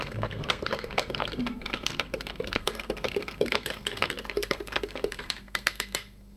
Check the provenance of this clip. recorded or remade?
remade